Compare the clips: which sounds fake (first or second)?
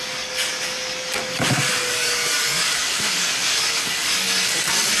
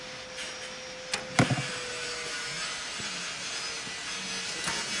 first